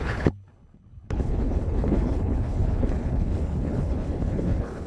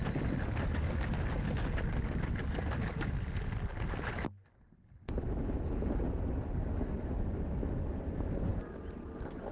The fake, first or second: first